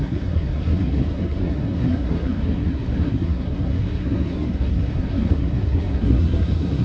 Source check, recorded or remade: remade